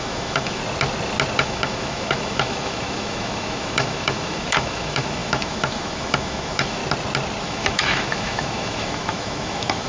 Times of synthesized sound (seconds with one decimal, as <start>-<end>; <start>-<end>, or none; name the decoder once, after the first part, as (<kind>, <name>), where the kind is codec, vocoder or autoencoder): 0.0-0.6 (autoencoder, DAC-VAE); 1.4-6.8; 7.4-9.9